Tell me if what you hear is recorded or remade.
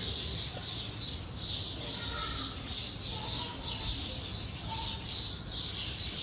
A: recorded